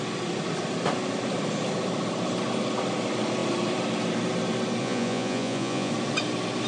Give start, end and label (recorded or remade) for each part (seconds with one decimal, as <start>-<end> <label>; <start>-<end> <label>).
0.0-4.8 recorded; 4.8-5.9 remade; 5.9-6.7 recorded